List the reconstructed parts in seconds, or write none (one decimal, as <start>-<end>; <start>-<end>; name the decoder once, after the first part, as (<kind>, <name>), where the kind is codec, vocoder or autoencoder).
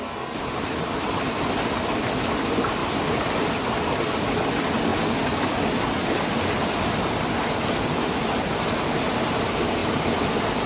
2.8-3.4 (vocoder, BigVGAN v2); 9.8-10.7